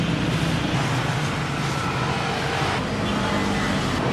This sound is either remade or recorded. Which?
recorded